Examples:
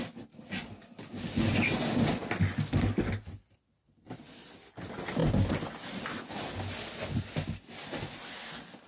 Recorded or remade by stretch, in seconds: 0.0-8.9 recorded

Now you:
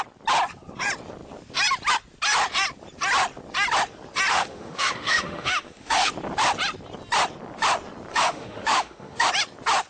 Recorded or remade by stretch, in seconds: 0.0-4.3 recorded; 4.3-6.1 remade; 6.1-8.1 recorded; 8.1-9.3 remade; 9.3-9.9 recorded

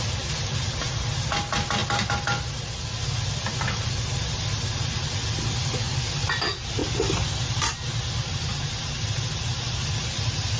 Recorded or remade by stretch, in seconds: 0.0-10.6 recorded

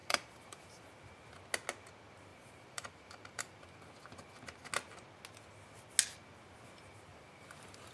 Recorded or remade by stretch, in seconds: 0.0-0.9 remade; 0.9-2.3 recorded; 2.3-3.9 remade; 3.9-7.1 recorded; 7.1-7.9 remade